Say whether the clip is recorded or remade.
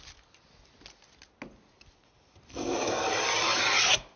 recorded